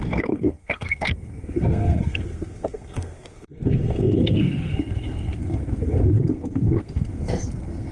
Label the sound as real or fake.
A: fake